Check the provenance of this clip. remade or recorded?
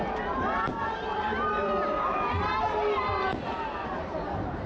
remade